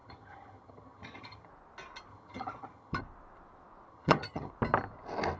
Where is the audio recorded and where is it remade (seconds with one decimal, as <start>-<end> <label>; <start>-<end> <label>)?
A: 0.0-1.5 remade; 1.5-2.1 recorded; 2.1-3.0 remade; 3.0-3.9 recorded; 3.9-4.5 remade; 4.5-5.4 recorded